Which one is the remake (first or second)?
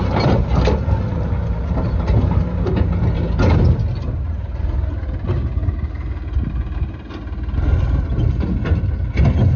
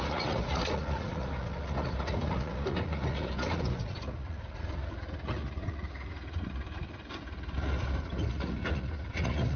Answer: second